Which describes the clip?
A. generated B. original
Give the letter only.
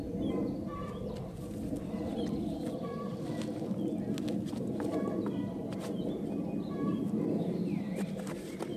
B